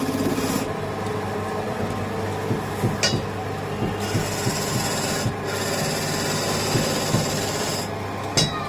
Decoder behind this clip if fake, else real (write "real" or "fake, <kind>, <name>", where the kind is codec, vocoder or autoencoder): real